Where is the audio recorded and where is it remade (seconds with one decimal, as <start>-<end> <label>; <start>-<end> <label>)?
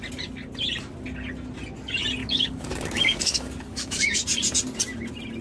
0.0-2.2 recorded; 2.2-4.2 remade; 4.2-5.4 recorded